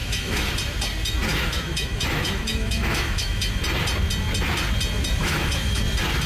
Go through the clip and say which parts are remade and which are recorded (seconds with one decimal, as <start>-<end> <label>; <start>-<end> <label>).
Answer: 0.0-0.5 remade; 0.5-1.3 recorded; 1.3-3.6 remade; 3.6-5.2 recorded; 5.2-5.8 remade; 5.8-6.3 recorded